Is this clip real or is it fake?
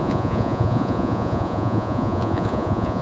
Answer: fake